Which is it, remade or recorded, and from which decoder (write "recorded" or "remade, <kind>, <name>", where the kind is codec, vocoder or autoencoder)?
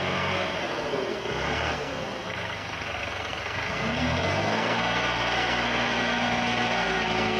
remade, codec, SNAC